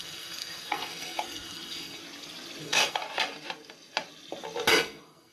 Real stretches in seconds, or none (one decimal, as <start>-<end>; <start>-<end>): 2.0-2.6; 3.0-4.7